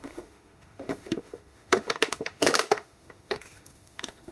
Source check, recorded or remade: remade